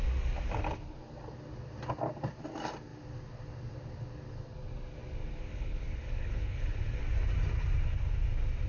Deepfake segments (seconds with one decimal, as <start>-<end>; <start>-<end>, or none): 5.5-7.0